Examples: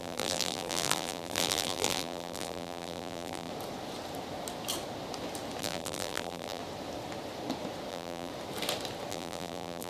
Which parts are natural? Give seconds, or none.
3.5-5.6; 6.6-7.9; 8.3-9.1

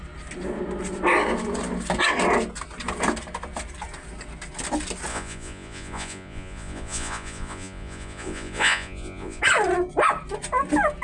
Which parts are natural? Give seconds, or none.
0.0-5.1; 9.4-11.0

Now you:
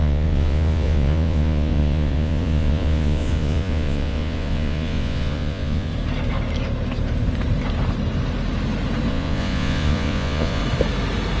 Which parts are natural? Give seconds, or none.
5.9-9.1; 10.6-11.4

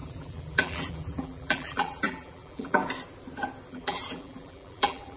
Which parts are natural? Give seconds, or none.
2.8-3.7

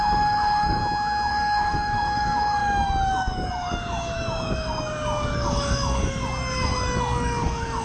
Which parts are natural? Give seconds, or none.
0.8-1.3

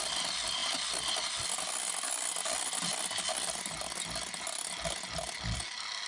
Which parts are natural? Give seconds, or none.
0.0-6.1

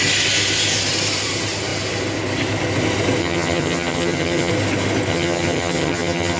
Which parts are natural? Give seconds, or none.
0.0-3.2; 4.5-5.1

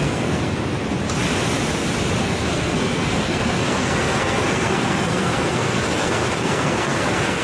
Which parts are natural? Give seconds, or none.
0.6-2.2